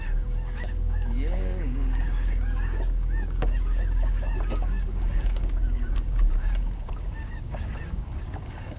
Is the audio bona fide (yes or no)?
no